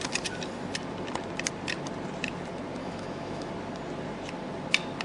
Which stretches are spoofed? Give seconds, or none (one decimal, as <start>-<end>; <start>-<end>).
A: 2.8-3.5